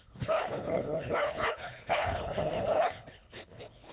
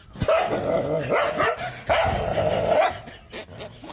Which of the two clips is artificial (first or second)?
first